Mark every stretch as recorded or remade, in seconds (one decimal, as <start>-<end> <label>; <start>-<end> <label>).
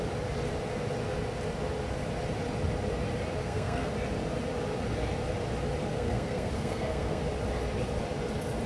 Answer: 0.0-3.4 recorded; 3.4-3.9 remade; 3.9-5.9 recorded; 5.9-7.2 remade; 7.2-8.7 recorded